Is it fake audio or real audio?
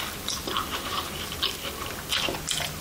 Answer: fake